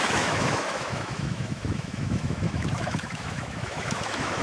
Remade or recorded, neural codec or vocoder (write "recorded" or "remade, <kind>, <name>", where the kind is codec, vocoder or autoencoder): remade, autoencoder, DAC-VAE